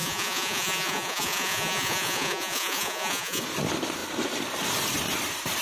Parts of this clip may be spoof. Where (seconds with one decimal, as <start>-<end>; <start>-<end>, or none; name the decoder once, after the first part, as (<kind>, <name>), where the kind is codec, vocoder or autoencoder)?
0.0-3.4 (vocoder, Vocos)